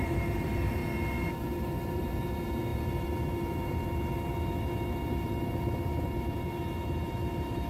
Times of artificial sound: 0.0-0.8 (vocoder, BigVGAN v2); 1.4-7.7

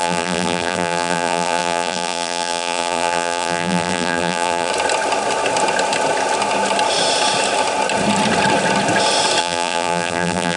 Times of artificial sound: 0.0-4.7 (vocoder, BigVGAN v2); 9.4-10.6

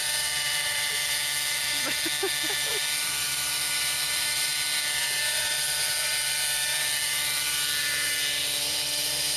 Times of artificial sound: 0.0-1.2 (vocoder, BigVGAN v2); 3.2-4.5; 8.4-9.4